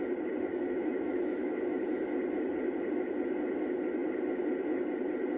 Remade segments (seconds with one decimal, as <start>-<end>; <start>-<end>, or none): 0.5-1.9